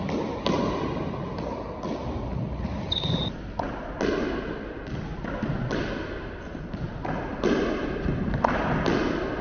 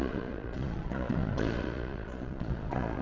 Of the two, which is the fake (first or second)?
second